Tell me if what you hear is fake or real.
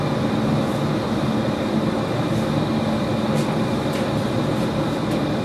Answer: real